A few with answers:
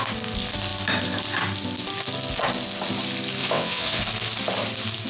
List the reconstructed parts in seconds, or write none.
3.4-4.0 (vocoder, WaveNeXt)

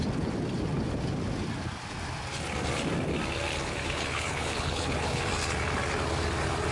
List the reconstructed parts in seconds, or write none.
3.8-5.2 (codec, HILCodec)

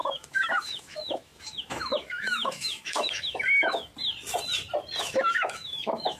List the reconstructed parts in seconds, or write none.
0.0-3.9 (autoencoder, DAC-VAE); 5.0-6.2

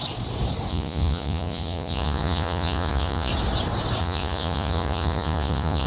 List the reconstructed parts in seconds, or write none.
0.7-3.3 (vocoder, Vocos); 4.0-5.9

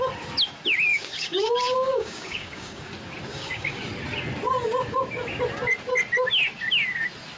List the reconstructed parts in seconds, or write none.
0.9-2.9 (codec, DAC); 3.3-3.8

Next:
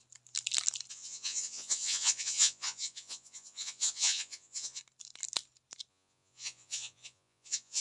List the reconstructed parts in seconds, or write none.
0.9-4.8 (vocoder, Vocos); 5.9-7.8

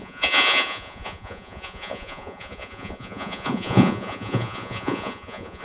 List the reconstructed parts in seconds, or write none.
0.0-5.6 (vocoder, Vocos)

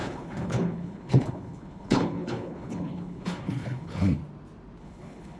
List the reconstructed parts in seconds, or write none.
0.0-4.2 (codec, HILCodec); 4.8-5.4